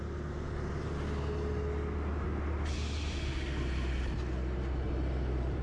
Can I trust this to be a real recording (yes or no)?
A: yes